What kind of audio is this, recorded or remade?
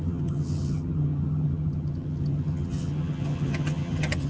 remade